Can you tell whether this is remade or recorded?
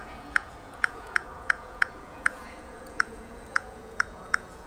remade